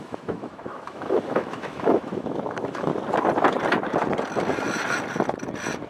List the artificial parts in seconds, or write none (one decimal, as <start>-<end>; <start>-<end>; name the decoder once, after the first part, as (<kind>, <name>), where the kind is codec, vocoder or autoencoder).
0.0-2.9 (autoencoder, DAC-VAE)